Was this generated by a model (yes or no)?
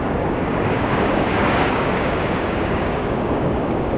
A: yes